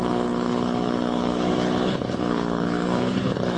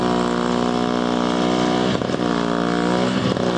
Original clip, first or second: second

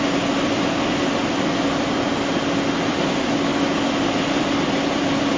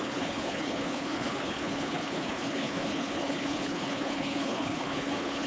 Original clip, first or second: first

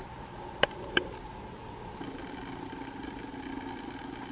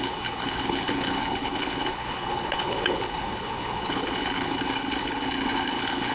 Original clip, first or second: first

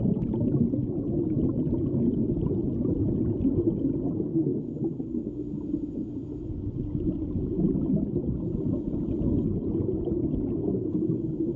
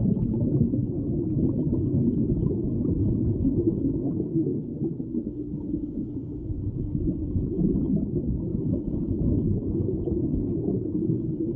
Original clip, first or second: first